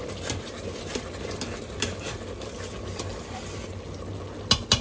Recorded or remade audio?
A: recorded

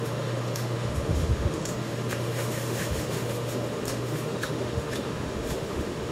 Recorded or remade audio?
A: remade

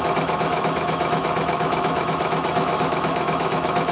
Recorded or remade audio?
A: remade